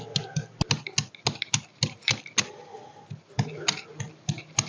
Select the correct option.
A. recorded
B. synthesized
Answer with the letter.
A